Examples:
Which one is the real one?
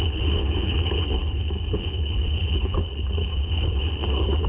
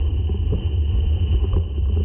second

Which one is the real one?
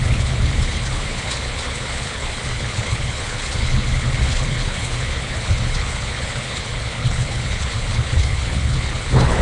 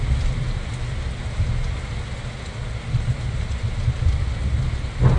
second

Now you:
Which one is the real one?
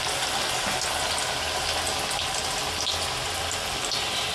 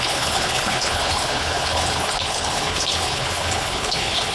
first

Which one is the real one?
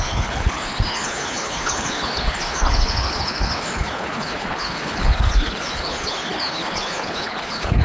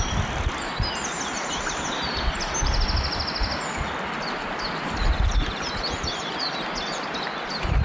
second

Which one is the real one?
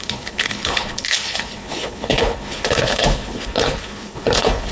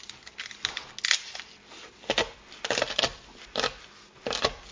second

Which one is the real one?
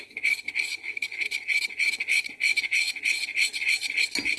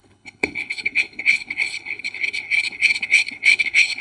first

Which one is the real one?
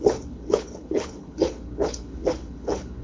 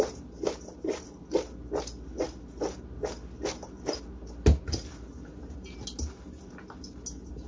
second